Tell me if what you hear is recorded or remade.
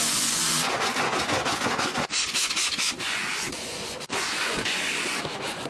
remade